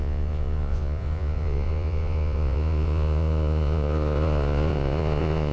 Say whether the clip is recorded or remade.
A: remade